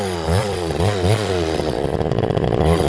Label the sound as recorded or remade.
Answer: remade